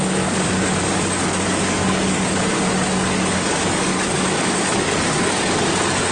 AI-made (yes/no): yes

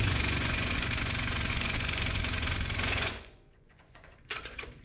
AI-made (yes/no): yes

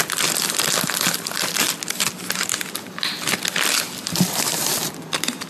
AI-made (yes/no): no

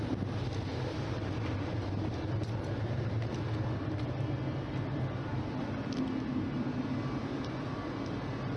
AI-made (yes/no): no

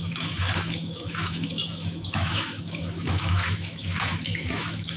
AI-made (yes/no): yes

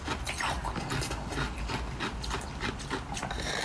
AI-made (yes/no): no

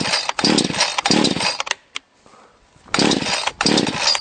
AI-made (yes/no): no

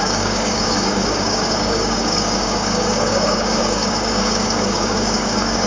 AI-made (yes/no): yes